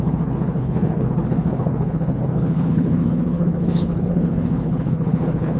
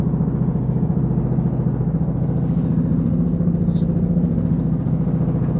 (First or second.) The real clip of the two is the second